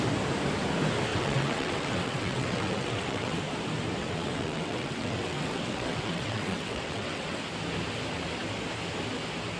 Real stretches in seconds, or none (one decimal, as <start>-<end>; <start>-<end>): 0.0-1.1; 3.4-4.0; 7.4-9.6